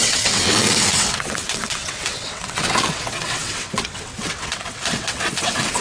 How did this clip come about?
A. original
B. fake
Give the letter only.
B